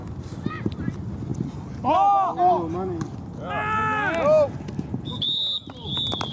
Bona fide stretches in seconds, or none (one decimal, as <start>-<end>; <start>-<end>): 0.9-6.3